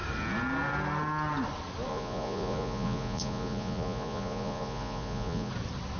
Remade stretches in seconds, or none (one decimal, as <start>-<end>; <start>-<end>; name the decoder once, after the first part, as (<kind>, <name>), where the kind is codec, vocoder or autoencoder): 1.9-5.5 (vocoder, Vocos)